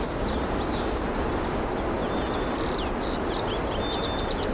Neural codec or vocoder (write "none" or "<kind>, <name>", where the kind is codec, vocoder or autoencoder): none